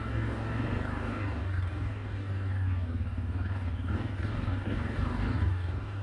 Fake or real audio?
fake